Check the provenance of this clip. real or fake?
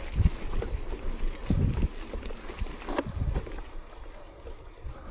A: real